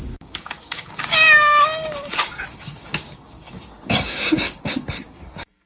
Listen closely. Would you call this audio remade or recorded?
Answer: remade